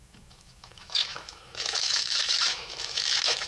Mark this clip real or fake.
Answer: fake